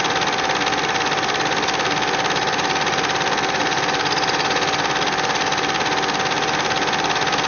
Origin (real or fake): real